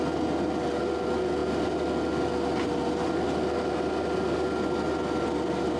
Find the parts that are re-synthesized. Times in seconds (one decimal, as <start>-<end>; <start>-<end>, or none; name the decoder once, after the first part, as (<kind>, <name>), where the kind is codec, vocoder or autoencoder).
none